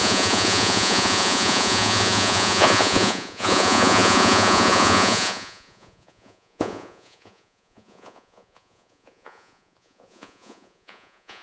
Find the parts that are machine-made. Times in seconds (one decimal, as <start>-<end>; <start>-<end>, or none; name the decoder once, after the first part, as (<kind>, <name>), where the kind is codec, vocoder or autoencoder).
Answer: 0.0-11.4 (vocoder, Vocos)